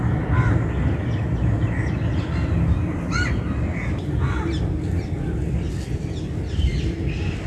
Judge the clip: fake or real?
real